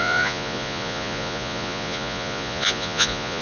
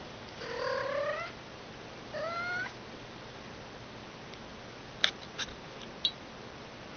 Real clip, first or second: second